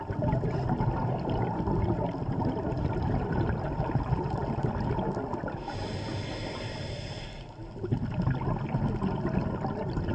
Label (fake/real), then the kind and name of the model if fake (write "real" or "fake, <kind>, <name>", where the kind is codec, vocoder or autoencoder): real